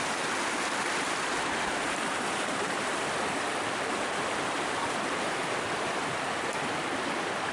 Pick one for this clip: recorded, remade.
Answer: remade